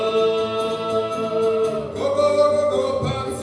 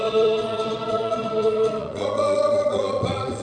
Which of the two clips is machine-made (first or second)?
second